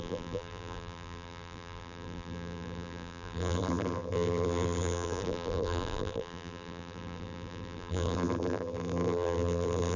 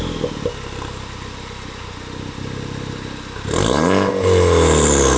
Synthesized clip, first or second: first